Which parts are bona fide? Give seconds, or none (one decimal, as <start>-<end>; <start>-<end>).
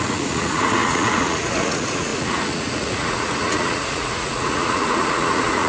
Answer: none